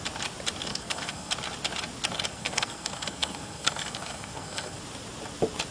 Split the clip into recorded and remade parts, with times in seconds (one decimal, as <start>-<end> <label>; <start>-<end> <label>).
0.0-0.7 recorded; 0.7-1.3 remade; 1.3-2.3 recorded; 2.3-4.8 remade; 4.8-5.7 recorded